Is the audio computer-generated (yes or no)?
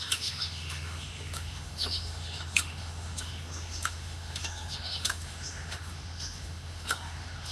yes